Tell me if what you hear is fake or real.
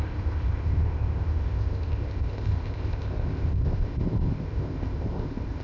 fake